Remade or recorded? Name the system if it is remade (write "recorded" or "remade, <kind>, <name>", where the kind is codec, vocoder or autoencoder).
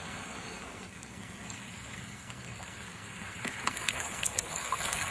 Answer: remade, codec, SNAC